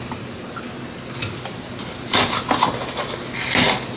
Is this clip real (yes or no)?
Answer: yes